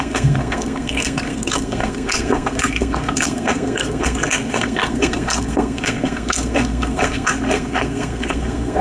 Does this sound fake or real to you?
fake